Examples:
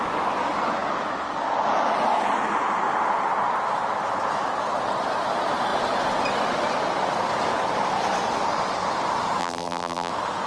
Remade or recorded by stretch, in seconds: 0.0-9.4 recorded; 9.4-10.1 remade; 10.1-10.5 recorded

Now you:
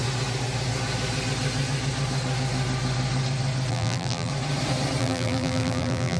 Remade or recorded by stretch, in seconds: 0.0-3.7 recorded; 3.7-4.3 remade; 4.3-5.0 recorded; 5.0-6.2 remade

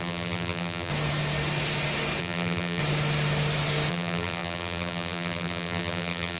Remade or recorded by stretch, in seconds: 0.0-0.9 remade; 0.9-2.2 recorded; 2.2-2.8 remade; 2.8-3.9 recorded; 3.9-6.4 remade

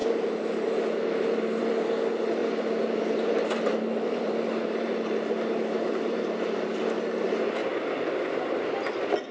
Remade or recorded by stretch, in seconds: 0.0-1.6 remade; 1.6-2.4 recorded; 2.4-6.8 remade; 6.8-7.6 recorded; 7.6-8.1 remade; 8.1-9.3 recorded

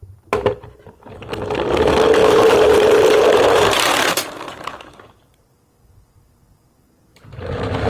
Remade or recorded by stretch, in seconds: 0.0-2.2 recorded; 2.2-5.6 remade; 5.6-7.1 recorded; 7.1-7.9 remade

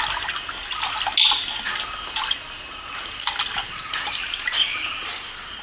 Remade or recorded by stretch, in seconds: 0.0-3.6 recorded; 3.6-5.6 remade

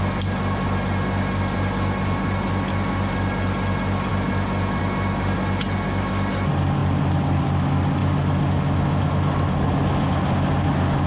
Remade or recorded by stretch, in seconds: 0.0-11.1 recorded

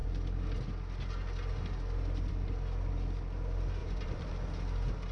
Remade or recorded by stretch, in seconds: 0.0-3.8 recorded; 3.8-4.3 remade; 4.3-5.1 recorded